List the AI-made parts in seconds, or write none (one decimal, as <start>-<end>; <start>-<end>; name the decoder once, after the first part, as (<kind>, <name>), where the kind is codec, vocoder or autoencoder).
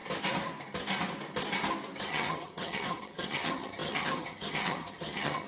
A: 2.0-5.5 (vocoder, HiFi-GAN)